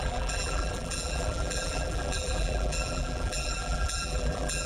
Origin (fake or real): fake